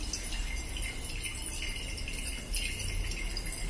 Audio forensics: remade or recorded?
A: recorded